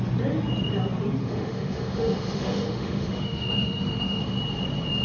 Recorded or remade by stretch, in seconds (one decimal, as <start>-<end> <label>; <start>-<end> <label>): 0.0-1.2 recorded; 1.2-4.2 remade; 4.2-5.0 recorded